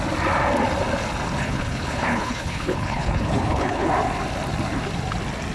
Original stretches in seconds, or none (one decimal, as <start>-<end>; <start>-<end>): 0.0-1.4; 3.9-5.5